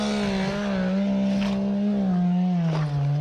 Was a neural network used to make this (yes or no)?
no